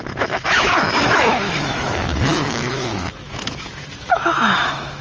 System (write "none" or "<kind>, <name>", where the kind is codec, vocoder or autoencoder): autoencoder, DAC-VAE